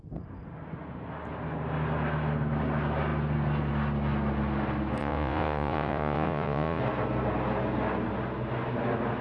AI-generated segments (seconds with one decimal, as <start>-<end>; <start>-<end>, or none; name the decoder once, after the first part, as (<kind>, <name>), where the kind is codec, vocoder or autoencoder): 5.0-6.8 (vocoder, Vocos)